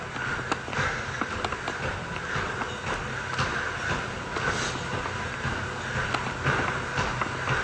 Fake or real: real